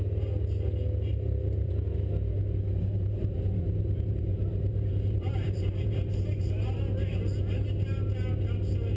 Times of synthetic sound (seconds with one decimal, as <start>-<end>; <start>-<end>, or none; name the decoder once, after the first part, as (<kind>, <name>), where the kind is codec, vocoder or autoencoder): 1.1-1.7 (vocoder, BigVGAN v2); 2.8-6.7